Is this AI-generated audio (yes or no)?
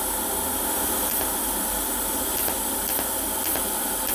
no